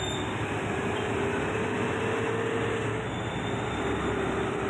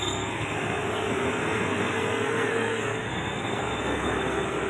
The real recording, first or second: first